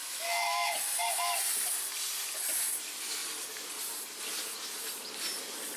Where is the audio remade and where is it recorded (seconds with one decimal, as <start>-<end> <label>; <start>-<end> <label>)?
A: 0.0-0.7 remade; 0.7-5.8 recorded